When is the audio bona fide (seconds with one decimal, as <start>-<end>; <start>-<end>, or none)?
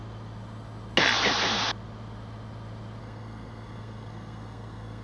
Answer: 0.0-3.0